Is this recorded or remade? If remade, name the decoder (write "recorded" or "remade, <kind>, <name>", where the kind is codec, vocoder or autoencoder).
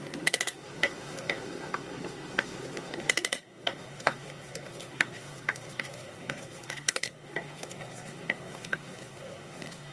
remade, codec, SNAC